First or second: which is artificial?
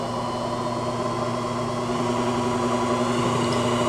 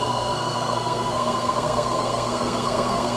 second